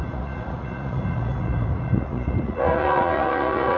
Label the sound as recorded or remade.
remade